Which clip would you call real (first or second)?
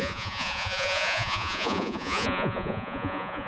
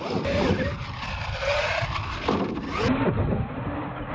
second